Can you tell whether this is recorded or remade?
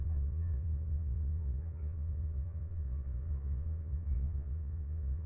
remade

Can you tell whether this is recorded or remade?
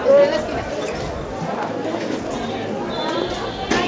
recorded